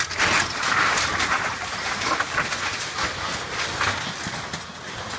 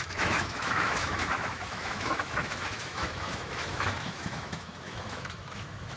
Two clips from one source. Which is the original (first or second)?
first